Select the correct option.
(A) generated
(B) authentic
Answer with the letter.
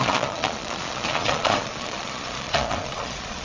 A